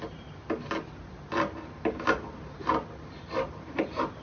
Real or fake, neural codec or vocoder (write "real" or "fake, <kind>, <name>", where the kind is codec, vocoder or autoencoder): real